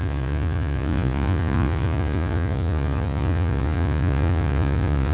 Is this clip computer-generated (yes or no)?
yes